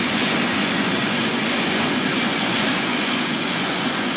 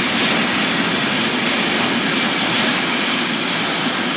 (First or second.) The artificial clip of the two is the first